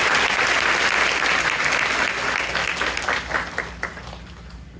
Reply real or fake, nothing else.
real